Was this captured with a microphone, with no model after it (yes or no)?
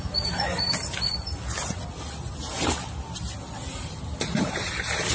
yes